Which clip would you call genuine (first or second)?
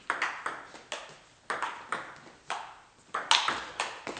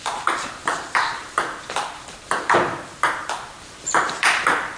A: first